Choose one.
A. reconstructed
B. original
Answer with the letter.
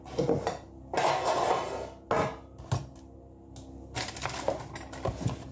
B